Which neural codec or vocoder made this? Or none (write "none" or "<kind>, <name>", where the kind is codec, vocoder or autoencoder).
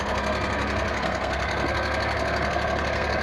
codec, SNAC